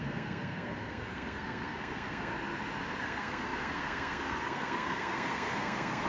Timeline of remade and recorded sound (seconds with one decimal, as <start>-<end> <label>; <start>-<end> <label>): 0.0-2.3 remade; 2.3-3.0 recorded; 3.0-6.1 remade